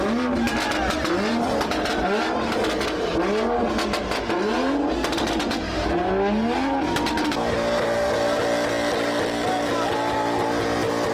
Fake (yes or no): no